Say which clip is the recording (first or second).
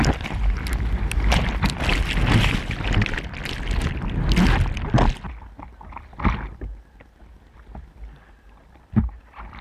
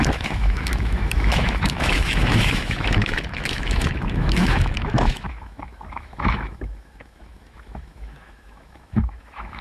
first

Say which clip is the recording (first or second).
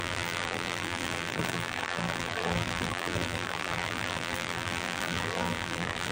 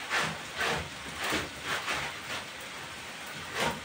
second